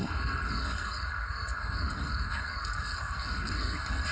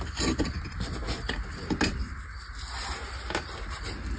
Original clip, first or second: second